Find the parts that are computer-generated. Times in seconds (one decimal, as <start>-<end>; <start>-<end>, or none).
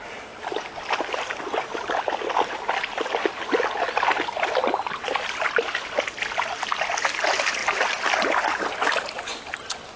none